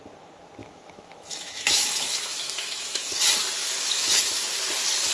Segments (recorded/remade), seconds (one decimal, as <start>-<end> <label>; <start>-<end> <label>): 0.0-0.6 recorded; 0.6-3.2 remade; 3.2-3.6 recorded; 3.6-4.2 remade; 4.2-5.1 recorded